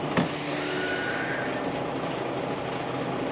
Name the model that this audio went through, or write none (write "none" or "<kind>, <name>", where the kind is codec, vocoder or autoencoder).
none